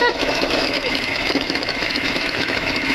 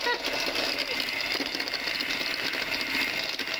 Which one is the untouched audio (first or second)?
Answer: second